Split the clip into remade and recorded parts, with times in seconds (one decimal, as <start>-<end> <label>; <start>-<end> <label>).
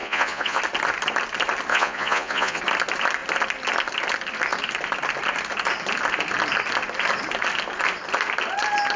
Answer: 0.0-0.6 remade; 0.6-1.7 recorded; 1.7-2.6 remade; 2.6-9.0 recorded